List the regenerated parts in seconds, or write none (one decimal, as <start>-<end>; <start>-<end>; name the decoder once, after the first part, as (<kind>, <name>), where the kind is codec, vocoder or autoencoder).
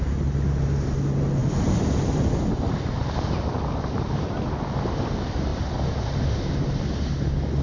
1.4-3.2 (vocoder, BigVGAN v2)